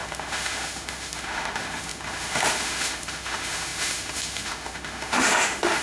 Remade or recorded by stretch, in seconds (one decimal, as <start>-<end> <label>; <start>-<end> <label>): 0.0-5.8 remade